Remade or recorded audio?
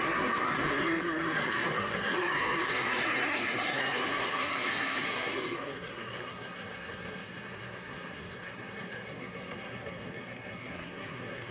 remade